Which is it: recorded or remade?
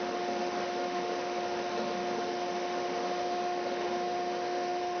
remade